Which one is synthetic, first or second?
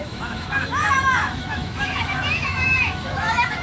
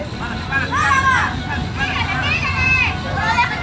first